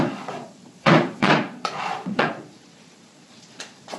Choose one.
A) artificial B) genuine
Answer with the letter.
A